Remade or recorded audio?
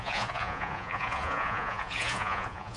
remade